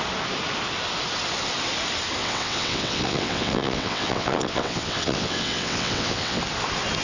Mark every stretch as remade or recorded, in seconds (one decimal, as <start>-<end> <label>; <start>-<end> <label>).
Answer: 0.0-2.2 recorded; 2.2-6.4 remade; 6.4-7.0 recorded